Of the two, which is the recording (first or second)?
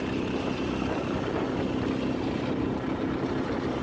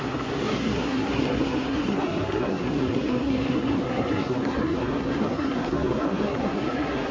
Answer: first